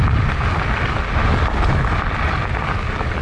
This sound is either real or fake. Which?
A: real